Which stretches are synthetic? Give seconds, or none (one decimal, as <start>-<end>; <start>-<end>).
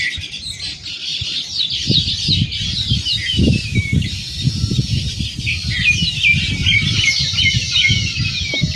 none